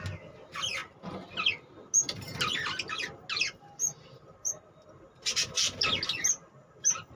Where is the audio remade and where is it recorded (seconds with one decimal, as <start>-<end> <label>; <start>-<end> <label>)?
0.0-7.2 recorded

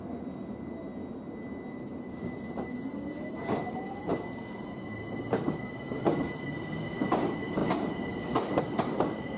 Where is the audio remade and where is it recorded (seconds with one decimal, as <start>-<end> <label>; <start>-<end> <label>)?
0.0-0.9 remade; 0.9-1.7 recorded; 1.7-4.1 remade; 4.1-6.0 recorded; 6.0-9.4 remade

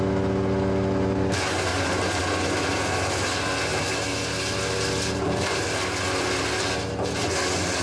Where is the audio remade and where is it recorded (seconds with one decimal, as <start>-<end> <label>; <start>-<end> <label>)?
0.0-1.7 recorded; 1.7-2.2 remade; 2.2-7.8 recorded

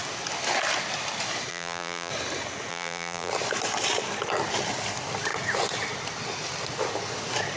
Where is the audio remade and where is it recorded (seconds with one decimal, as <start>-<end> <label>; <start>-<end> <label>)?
0.0-1.5 recorded; 1.5-2.1 remade; 2.1-2.7 recorded; 2.7-3.3 remade; 3.3-7.6 recorded

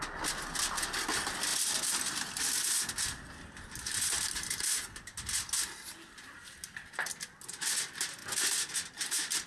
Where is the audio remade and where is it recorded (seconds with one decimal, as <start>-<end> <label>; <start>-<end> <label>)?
0.0-9.5 recorded